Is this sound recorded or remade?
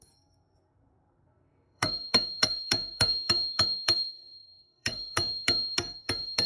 remade